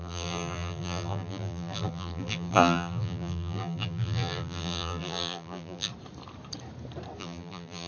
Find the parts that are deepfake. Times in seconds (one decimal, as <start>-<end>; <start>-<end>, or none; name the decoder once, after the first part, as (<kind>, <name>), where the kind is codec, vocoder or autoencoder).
0.0-5.9 (vocoder, BigVGAN v2); 7.2-7.9